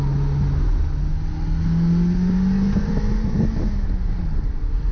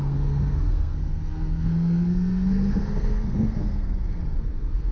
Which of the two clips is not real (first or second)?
second